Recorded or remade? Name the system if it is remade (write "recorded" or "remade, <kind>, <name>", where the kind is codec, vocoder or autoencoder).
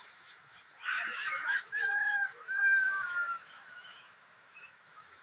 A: remade, autoencoder, DAC-VAE